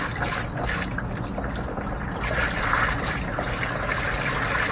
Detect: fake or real real